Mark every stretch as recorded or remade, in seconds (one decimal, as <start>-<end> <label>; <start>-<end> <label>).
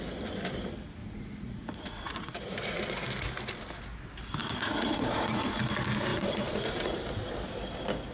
0.0-1.0 recorded; 1.0-2.8 remade; 2.8-4.4 recorded; 4.4-5.5 remade; 5.5-6.1 recorded; 6.1-6.9 remade; 6.9-8.1 recorded